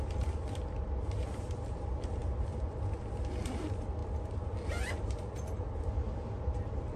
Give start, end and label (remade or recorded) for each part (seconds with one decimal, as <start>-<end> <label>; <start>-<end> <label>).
0.0-4.0 remade; 4.0-5.8 recorded; 5.8-7.0 remade